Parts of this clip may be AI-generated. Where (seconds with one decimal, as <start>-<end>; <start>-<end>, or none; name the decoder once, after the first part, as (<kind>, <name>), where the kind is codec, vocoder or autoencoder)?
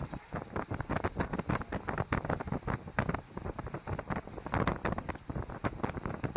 5.3-6.4 (vocoder, BigVGAN v2)